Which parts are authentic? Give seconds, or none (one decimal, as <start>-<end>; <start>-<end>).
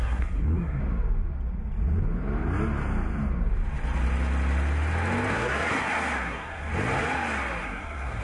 0.8-5.3; 6.7-7.6